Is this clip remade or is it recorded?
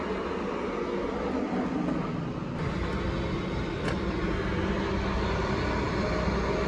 recorded